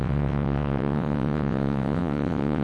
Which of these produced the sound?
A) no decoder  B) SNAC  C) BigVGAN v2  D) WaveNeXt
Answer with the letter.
D